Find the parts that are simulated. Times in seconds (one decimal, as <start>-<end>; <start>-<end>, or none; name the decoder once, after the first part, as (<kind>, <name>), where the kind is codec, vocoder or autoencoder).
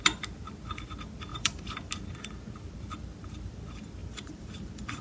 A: 1.3-1.9 (vocoder, BigVGAN v2); 4.0-5.0